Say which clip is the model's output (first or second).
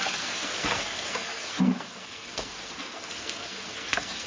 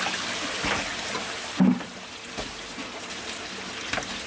first